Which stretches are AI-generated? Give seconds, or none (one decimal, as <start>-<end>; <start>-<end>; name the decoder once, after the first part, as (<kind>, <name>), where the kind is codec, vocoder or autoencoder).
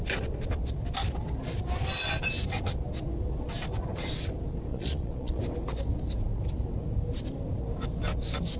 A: 4.7-5.4 (vocoder, Vocos)